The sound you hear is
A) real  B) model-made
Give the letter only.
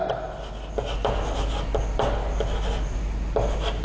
A